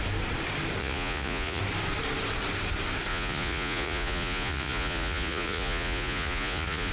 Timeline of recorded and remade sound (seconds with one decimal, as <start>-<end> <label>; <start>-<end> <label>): 0.0-0.8 recorded; 0.8-1.6 remade; 1.6-3.1 recorded; 3.1-6.9 remade